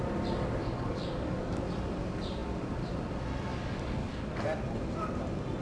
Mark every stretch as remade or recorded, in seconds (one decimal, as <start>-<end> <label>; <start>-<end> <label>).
0.0-0.6 recorded; 0.6-1.6 remade; 1.6-3.5 recorded; 3.5-4.3 remade; 4.3-5.6 recorded